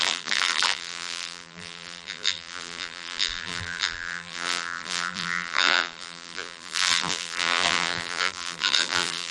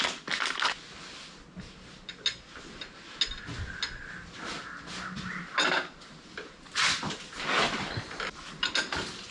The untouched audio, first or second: second